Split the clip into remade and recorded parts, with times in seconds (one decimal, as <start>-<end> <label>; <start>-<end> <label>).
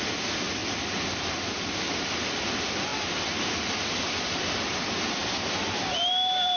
0.0-6.6 recorded